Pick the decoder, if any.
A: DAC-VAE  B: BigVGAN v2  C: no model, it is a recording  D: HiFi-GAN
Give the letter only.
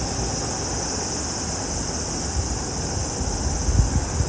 C